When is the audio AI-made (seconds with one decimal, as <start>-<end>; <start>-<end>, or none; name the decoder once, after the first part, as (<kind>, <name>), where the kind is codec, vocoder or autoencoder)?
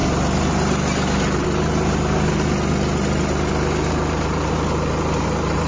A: none